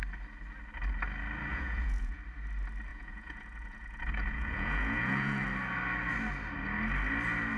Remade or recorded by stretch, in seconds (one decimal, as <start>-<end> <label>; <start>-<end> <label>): 0.0-1.5 recorded; 1.5-2.2 remade; 2.2-2.9 recorded; 2.9-5.4 remade; 5.4-7.6 recorded